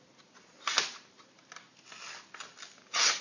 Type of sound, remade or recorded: recorded